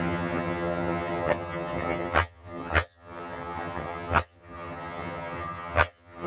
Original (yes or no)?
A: no